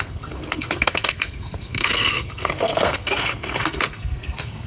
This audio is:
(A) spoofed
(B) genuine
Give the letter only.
A